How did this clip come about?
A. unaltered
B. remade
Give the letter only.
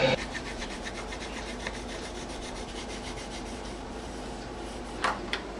B